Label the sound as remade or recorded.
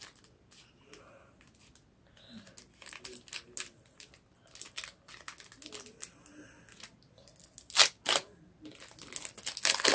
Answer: recorded